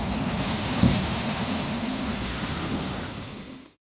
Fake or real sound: fake